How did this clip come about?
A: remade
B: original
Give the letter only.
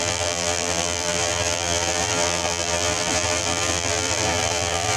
A